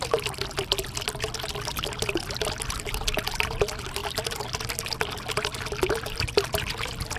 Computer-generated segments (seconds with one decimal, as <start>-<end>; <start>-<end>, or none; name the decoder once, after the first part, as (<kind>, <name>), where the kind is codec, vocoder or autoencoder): none